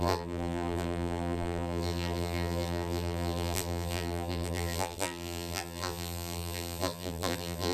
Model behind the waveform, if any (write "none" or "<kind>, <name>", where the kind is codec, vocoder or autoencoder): vocoder, BigVGAN v2